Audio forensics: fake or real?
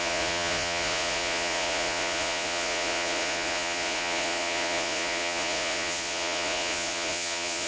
fake